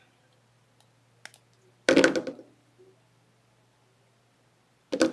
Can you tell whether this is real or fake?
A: real